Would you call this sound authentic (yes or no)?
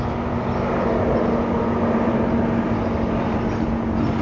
yes